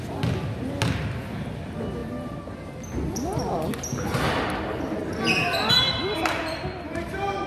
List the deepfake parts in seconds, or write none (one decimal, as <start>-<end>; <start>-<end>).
none